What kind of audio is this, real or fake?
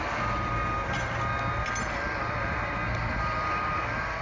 real